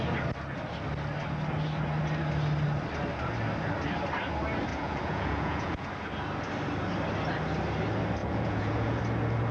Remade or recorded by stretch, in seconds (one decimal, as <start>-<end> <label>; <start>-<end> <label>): 0.0-4.7 recorded; 4.7-5.9 remade; 5.9-8.2 recorded; 8.2-9.0 remade; 9.0-9.5 recorded